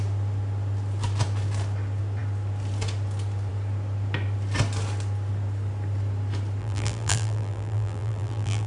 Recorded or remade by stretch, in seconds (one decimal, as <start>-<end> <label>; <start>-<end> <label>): 0.0-6.6 recorded; 6.6-8.7 remade